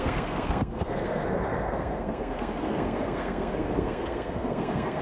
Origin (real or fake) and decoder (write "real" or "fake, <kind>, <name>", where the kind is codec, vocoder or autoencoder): fake, codec, SNAC